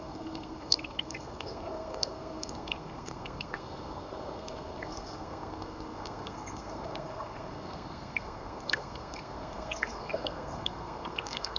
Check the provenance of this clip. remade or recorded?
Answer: remade